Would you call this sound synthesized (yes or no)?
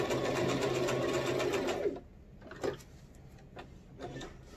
no